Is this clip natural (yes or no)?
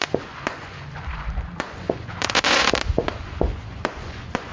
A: no